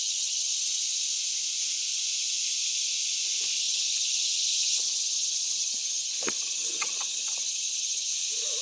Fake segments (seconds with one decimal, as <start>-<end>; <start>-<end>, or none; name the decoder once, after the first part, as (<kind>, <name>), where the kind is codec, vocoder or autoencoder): 0.0-0.5 (vocoder, HiFi-GAN); 3.6-8.1